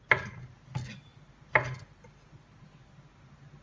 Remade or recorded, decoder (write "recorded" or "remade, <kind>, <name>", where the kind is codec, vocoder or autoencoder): recorded